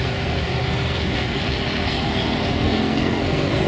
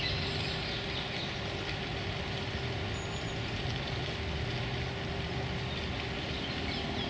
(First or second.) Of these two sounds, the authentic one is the second